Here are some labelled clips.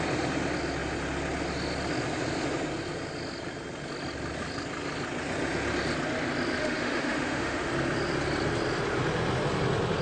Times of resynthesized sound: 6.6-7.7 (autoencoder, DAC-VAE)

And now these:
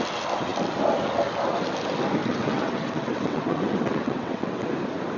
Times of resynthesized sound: 2.2-4.7 (vocoder, WaveNeXt)

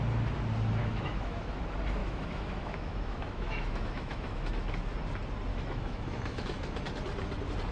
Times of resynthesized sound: 0.8-1.6 (autoencoder, DAC-VAE); 2.0-4.5; 5.5-6.8

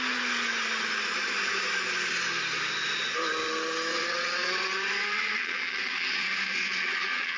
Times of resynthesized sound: 3.9-7.4 (vocoder, WaveNeXt)

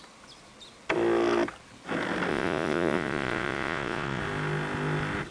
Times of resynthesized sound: 2.3-4.2 (vocoder, Vocos)

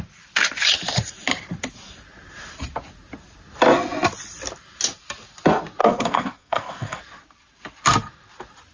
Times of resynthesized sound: 5.8-7.0 (codec, SNAC)

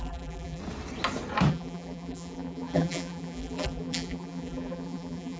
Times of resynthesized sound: 0.0-0.6 (vocoder, BigVGAN v2); 1.5-5.4